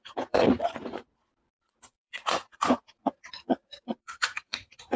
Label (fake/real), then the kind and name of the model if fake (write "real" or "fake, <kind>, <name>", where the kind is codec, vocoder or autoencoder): fake, vocoder, Vocos